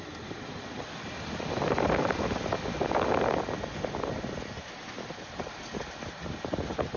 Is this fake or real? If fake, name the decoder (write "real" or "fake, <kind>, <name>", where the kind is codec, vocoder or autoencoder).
real